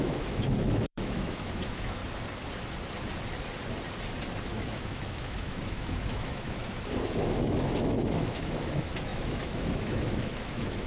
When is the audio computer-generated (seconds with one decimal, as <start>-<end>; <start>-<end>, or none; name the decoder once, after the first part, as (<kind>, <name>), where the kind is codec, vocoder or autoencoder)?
0.0-2.0 (autoencoder, DAC-VAE); 4.4-6.6; 7.2-10.9